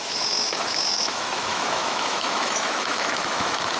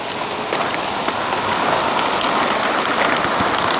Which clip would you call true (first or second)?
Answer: second